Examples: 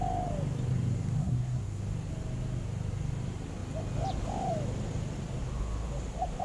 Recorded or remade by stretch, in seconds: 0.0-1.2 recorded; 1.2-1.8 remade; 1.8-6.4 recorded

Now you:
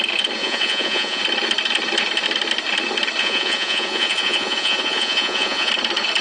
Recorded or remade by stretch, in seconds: 0.0-0.4 recorded; 0.4-1.2 remade; 1.2-3.2 recorded; 3.2-5.7 remade; 5.7-6.2 recorded

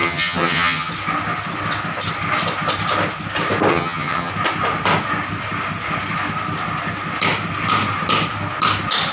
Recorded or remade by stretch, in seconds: 0.0-0.9 remade; 0.9-3.7 recorded; 3.7-4.3 remade; 4.3-9.1 recorded

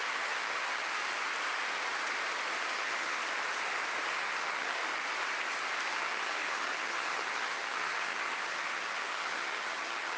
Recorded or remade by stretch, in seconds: 0.0-1.0 remade; 1.0-2.6 recorded; 2.6-3.2 remade; 3.2-4.1 recorded; 4.1-4.8 remade; 4.8-5.9 recorded; 5.9-10.2 remade